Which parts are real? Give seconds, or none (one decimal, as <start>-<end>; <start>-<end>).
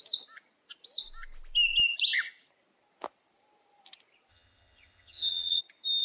0.0-4.3; 5.6-6.0